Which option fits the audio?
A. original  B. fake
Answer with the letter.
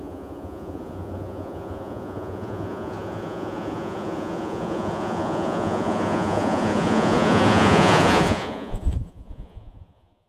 B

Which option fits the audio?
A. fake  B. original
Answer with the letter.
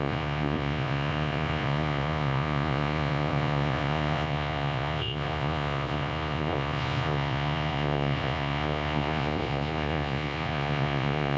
A